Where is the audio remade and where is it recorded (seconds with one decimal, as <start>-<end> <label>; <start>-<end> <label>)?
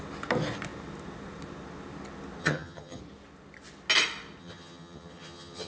0.0-2.4 recorded; 2.4-3.0 remade; 3.0-4.4 recorded; 4.4-5.7 remade